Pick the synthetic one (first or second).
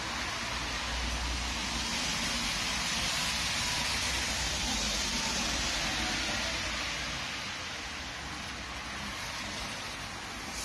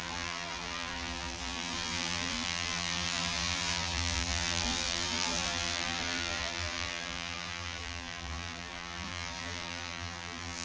second